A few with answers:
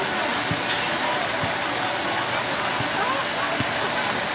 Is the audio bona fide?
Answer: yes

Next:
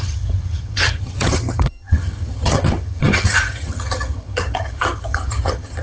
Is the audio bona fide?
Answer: no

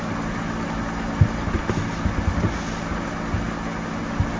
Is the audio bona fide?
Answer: yes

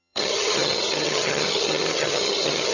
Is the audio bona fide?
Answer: no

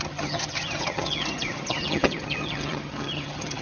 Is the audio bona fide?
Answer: no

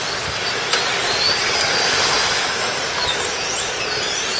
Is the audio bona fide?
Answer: yes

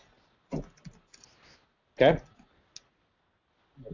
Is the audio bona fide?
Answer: yes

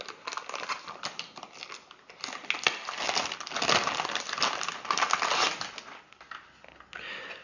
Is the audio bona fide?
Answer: yes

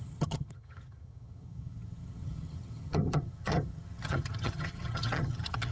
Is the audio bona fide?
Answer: no